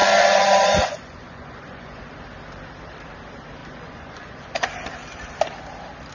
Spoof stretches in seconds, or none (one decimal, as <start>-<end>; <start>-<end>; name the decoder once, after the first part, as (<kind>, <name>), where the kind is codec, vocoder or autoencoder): 0.0-2.1 (vocoder, Vocos); 3.6-4.5